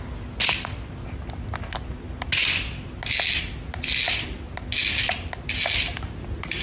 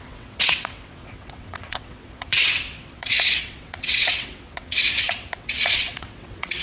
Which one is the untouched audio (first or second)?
first